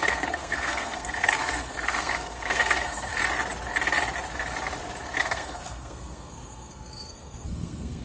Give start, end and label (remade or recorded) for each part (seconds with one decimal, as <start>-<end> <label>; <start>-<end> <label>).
0.0-3.2 remade; 3.2-5.2 recorded; 5.2-8.0 remade

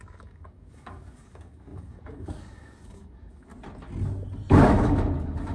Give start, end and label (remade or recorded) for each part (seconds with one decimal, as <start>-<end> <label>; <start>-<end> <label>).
0.0-3.5 remade; 3.5-4.5 recorded; 4.5-5.5 remade

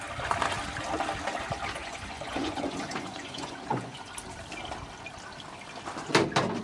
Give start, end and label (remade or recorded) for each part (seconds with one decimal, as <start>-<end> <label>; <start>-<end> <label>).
0.0-1.8 recorded; 1.8-4.1 remade; 4.1-6.6 recorded

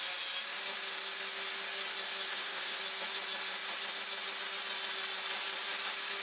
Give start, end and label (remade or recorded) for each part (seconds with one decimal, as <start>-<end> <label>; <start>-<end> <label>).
0.0-2.3 recorded; 2.3-2.8 remade; 2.8-6.2 recorded

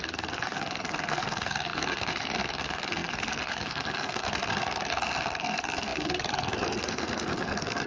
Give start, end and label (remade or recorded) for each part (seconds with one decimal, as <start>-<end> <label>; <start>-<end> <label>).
0.0-7.9 remade